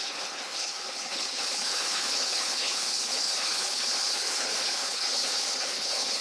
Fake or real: fake